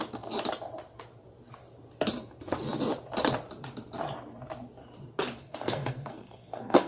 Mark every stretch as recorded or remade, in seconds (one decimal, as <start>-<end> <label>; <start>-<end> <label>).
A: 0.0-5.4 recorded; 5.4-6.9 remade